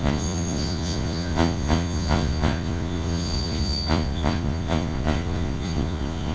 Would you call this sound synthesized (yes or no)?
yes